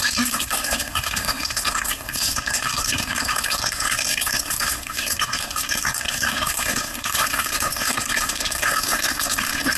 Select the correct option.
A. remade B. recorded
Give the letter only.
A